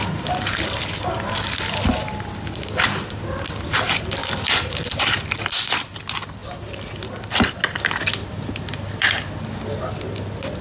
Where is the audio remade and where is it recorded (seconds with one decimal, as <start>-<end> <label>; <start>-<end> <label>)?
0.0-10.6 recorded